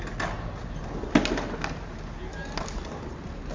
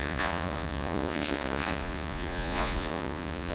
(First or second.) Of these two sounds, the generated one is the second